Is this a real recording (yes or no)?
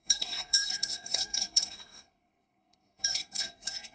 no